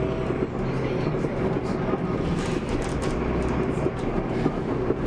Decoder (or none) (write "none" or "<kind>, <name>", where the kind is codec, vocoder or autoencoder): none